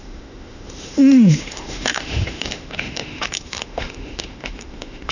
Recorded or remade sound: remade